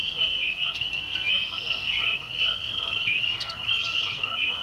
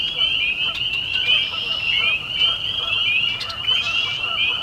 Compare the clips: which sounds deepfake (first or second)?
first